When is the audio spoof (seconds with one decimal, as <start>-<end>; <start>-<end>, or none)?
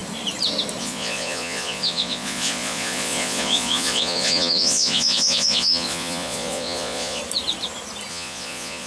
0.8-7.2; 8.1-8.9